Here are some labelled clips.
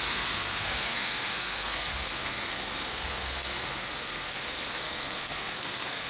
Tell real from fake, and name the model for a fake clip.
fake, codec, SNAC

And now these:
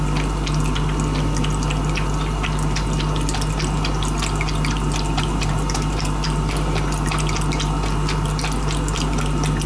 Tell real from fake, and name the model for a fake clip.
real